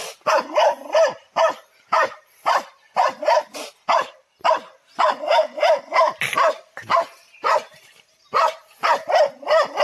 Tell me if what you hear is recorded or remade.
recorded